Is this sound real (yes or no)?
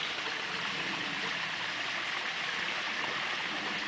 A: yes